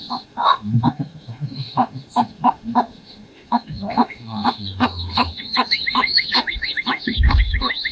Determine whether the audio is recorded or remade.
remade